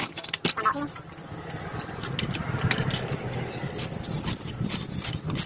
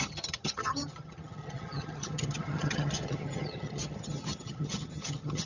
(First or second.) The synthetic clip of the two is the second